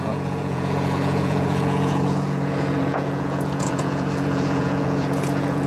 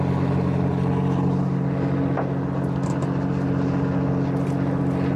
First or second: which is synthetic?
first